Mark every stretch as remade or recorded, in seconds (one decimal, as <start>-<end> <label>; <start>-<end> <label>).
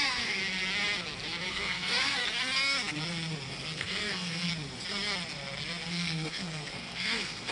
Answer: 0.0-0.4 remade; 0.4-1.5 recorded; 1.5-2.2 remade; 2.2-3.5 recorded; 3.5-4.5 remade; 4.5-5.9 recorded; 5.9-7.5 remade